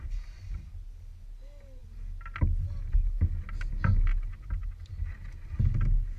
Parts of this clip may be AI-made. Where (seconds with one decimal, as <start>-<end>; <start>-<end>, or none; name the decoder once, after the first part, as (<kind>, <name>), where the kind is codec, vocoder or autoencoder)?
none